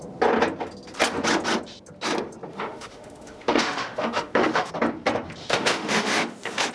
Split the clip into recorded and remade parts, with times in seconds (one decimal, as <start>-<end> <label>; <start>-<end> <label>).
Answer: 0.0-2.5 recorded; 2.5-4.7 remade; 4.7-5.4 recorded; 5.4-6.7 remade